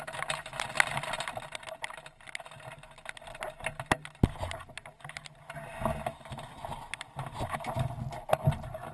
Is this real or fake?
real